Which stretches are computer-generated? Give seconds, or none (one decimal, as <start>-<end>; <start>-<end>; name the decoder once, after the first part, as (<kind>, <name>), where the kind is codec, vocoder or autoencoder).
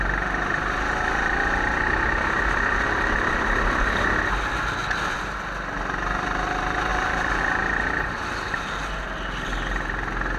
6.9-7.4 (vocoder, BigVGAN v2)